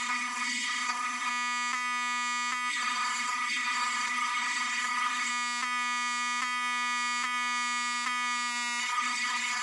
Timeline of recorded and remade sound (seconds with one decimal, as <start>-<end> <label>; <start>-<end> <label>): 0.0-1.3 remade; 1.3-2.7 recorded; 2.7-5.3 remade; 5.3-8.8 recorded; 8.8-9.6 remade

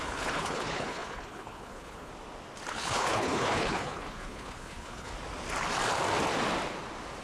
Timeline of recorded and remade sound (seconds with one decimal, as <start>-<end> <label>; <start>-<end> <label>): 0.0-2.1 remade; 2.1-2.7 recorded; 2.7-5.1 remade; 5.1-7.2 recorded

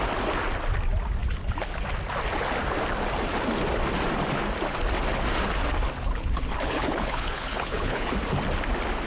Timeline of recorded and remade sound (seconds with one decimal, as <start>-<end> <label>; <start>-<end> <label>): 0.0-6.0 recorded; 6.0-8.1 remade; 8.1-9.1 recorded

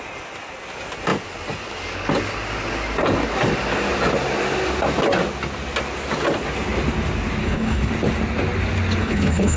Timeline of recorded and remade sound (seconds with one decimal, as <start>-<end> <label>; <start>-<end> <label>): 0.0-7.4 recorded; 7.4-7.9 remade; 7.9-9.0 recorded; 9.0-9.6 remade

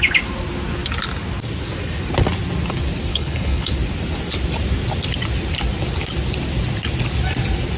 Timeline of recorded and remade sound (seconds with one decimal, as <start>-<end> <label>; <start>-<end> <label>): 0.0-3.1 recorded; 3.1-3.7 remade; 3.7-7.8 recorded

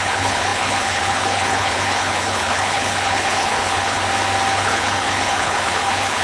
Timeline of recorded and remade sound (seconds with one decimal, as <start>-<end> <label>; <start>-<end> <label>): 0.0-4.0 remade; 4.0-4.5 recorded; 4.5-6.2 remade